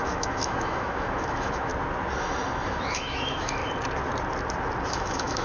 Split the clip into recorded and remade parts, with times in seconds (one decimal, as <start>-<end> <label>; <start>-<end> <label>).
0.0-1.7 remade; 1.7-2.7 recorded; 2.7-3.6 remade; 3.6-4.9 recorded; 4.9-5.4 remade